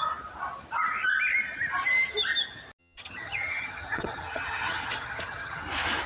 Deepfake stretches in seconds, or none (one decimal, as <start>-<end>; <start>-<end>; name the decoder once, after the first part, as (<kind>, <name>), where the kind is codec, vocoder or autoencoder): 2.8-5.6 (vocoder, HiFi-GAN)